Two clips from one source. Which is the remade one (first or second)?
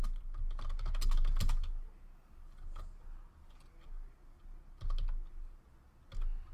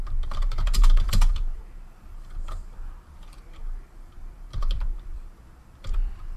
second